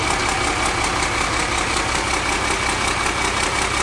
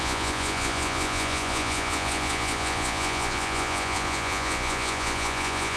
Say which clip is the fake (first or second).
second